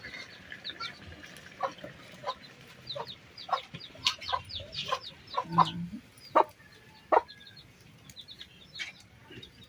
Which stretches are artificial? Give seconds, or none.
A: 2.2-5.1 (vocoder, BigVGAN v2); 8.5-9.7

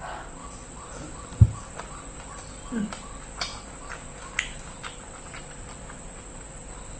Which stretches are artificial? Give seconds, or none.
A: 0.4-1.7 (vocoder, BigVGAN v2)

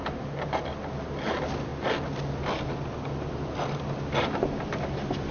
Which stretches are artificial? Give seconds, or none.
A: 0.0-1.7 (vocoder, BigVGAN v2); 3.4-5.3

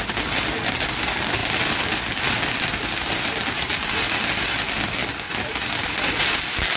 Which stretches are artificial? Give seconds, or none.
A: none

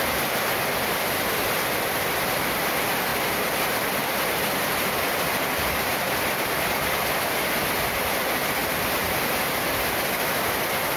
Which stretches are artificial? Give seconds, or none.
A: 8.6-9.5 (vocoder, BigVGAN v2)

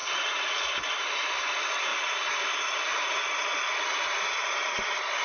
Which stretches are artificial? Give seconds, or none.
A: 1.0-1.9 (vocoder, BigVGAN v2)